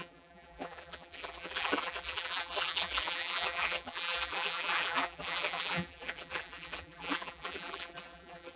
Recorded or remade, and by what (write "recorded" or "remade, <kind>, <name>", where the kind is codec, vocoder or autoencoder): remade, vocoder, BigVGAN v2